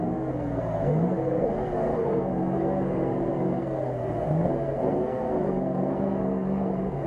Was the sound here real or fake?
fake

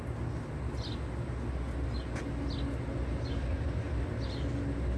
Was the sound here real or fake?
real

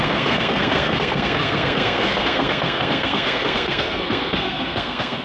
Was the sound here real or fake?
fake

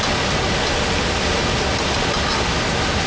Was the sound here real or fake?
real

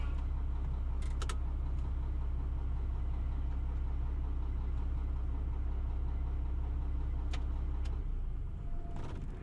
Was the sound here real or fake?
real